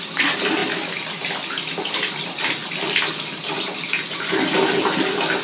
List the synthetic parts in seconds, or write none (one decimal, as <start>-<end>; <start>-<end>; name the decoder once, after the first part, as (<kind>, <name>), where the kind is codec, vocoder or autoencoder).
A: none